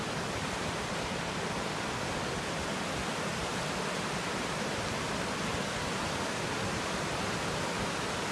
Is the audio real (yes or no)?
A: yes